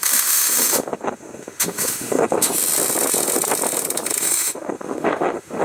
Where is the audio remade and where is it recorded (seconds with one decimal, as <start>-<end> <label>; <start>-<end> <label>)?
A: 0.0-2.5 remade; 2.5-4.2 recorded; 4.2-5.6 remade